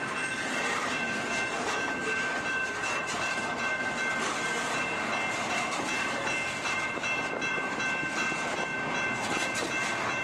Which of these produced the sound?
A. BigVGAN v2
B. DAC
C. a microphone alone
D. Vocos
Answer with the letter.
A